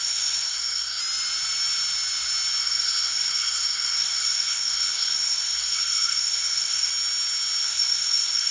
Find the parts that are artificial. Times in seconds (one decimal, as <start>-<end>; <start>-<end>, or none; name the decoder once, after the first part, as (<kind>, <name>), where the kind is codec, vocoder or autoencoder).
0.0-1.0 (codec, SNAC); 2.6-6.9; 7.6-8.5